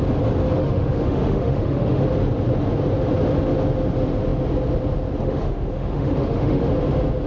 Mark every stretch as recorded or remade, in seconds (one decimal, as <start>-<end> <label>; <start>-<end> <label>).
0.0-0.6 recorded; 0.6-2.0 remade; 2.0-5.2 recorded; 5.2-6.7 remade; 6.7-7.3 recorded